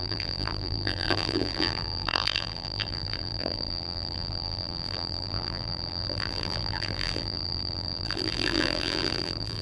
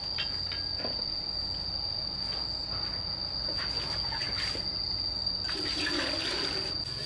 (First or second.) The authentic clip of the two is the second